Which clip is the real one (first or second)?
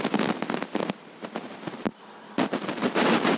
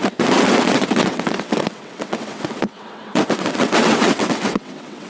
first